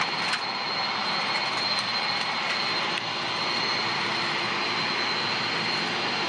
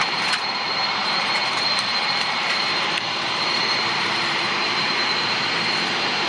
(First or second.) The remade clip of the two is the second